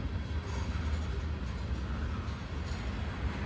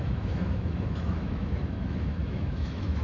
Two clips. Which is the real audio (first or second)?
first